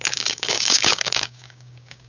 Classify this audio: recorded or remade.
remade